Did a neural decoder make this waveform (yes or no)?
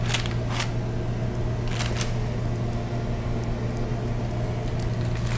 no